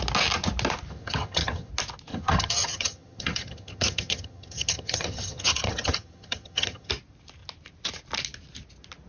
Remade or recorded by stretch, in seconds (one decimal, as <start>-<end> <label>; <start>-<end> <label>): 0.0-0.9 recorded; 0.9-1.7 remade; 1.7-2.1 recorded; 2.1-6.9 remade; 6.9-9.1 recorded